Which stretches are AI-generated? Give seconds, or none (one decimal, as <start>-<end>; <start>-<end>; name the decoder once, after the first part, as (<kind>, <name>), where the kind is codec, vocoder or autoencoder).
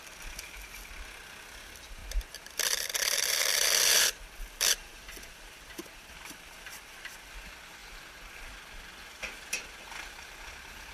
4.9-6.3 (vocoder, BigVGAN v2)